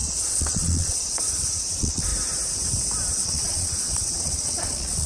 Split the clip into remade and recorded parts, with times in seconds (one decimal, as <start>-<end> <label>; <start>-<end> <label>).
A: 0.0-2.1 remade; 2.1-3.1 recorded; 3.1-5.1 remade